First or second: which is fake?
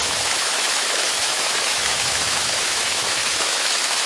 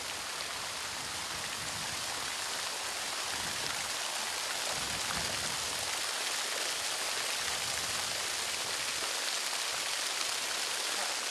first